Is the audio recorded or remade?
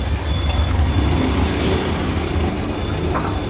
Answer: recorded